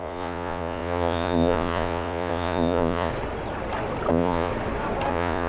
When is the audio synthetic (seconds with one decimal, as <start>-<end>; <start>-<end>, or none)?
0.0-3.1; 4.1-4.5; 5.1-5.5